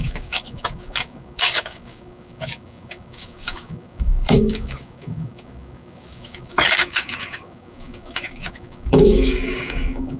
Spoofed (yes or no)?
yes